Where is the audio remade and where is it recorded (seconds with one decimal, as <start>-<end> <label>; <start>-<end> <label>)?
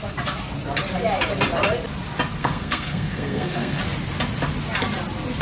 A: 0.0-2.4 recorded; 2.4-3.8 remade; 3.8-5.4 recorded